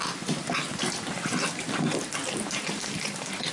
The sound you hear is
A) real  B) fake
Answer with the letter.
A